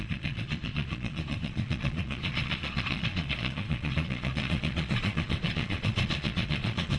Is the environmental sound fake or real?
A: fake